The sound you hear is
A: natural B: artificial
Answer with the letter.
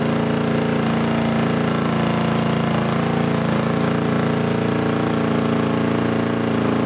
A